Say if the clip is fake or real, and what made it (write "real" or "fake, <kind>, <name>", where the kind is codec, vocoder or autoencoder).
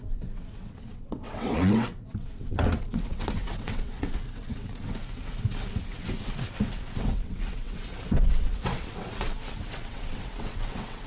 fake, vocoder, WaveNeXt